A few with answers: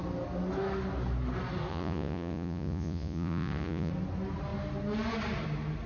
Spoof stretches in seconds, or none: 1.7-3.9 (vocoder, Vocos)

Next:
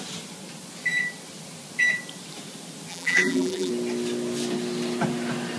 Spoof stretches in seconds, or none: 2.9-3.7 (vocoder, BigVGAN v2)

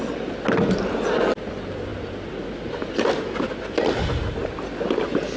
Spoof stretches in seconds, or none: none

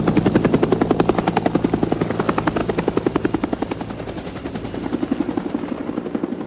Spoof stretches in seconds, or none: 2.6-6.5 (vocoder, BigVGAN v2)

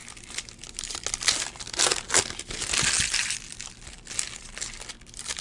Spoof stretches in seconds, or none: none